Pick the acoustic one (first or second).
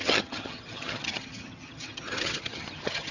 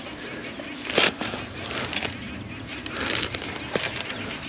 second